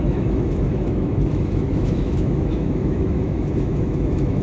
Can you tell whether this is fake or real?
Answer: fake